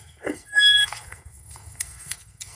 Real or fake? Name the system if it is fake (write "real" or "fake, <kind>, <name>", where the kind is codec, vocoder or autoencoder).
fake, codec, SNAC